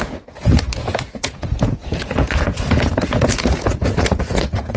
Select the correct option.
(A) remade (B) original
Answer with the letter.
A